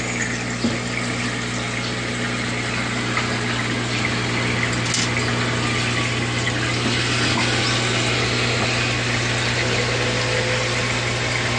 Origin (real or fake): real